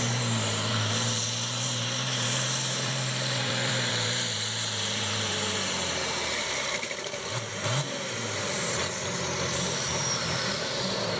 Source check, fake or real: fake